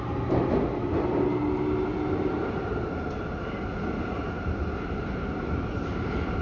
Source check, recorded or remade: recorded